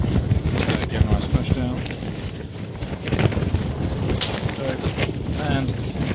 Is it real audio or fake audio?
real